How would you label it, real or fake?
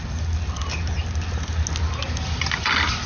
real